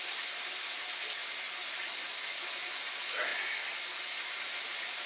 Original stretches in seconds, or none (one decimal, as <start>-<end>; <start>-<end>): 0.0-5.1